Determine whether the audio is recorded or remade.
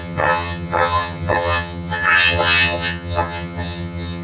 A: remade